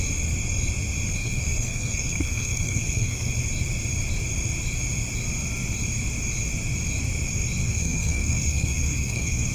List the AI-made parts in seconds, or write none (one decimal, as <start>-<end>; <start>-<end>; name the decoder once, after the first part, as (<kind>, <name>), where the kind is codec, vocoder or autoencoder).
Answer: 1.2-3.3 (codec, SNAC); 7.6-9.5